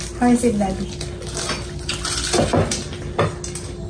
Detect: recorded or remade recorded